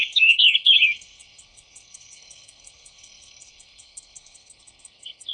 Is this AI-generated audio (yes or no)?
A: yes